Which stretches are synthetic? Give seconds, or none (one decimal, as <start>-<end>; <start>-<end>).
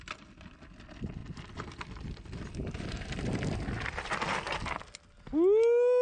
1.2-4.1